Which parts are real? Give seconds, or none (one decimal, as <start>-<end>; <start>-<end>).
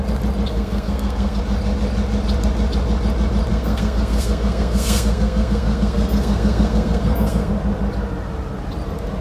0.0-0.5; 1.4-3.5; 7.5-9.2